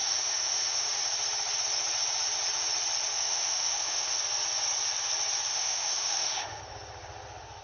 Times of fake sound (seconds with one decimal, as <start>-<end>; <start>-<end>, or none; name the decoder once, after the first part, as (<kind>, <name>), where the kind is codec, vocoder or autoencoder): 0.0-1.0 (autoencoder, DAC-VAE); 3.1-4.2; 5.5-6.6